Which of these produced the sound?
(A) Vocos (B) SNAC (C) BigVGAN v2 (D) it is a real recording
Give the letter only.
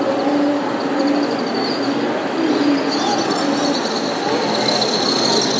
D